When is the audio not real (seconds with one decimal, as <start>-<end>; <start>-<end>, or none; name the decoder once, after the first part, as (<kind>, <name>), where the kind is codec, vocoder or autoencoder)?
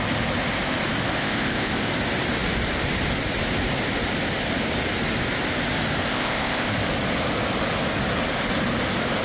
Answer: 1.2-1.9 (codec, ZipCodec); 6.1-6.7